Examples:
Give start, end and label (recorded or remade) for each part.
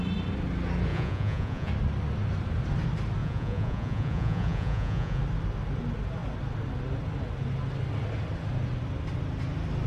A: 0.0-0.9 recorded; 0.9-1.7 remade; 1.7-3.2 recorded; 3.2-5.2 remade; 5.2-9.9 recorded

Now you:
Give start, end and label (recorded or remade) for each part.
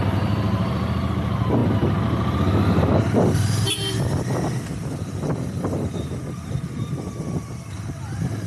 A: 0.0-8.5 recorded